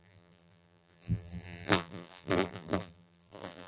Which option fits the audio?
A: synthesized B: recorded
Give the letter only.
A